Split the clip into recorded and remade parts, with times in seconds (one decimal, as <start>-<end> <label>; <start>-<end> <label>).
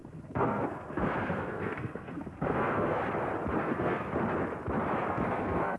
0.0-3.0 remade; 3.0-3.6 recorded; 3.6-4.1 remade; 4.1-5.1 recorded; 5.1-5.8 remade